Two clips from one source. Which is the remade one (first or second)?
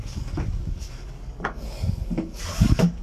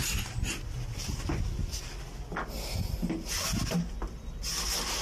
first